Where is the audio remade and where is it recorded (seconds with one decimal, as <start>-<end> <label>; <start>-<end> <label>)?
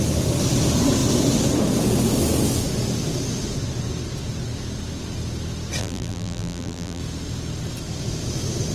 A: 0.0-5.8 recorded; 5.8-7.0 remade; 7.0-8.7 recorded